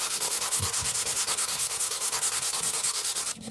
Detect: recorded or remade remade